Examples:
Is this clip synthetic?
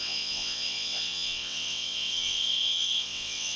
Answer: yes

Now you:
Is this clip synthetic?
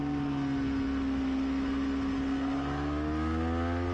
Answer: no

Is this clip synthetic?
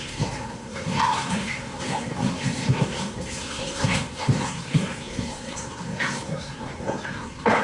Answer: yes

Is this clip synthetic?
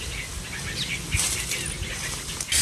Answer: no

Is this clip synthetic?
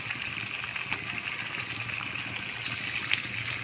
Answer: no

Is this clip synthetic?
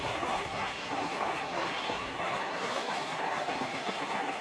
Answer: yes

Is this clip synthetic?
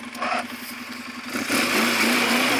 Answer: no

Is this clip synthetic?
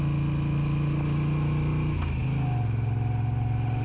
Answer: no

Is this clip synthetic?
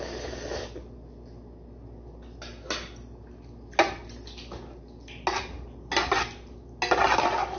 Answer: no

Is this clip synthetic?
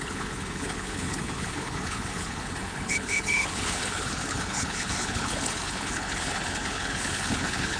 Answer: yes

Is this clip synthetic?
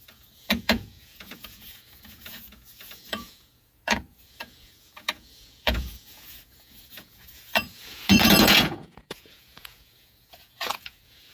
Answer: yes